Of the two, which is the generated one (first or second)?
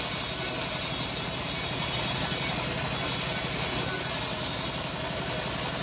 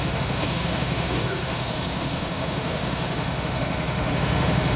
second